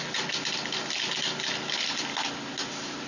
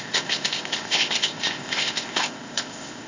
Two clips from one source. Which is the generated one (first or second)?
second